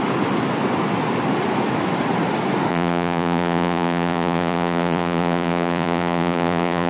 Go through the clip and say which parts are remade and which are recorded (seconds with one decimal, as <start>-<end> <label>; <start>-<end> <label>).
0.0-2.7 recorded; 2.7-6.9 remade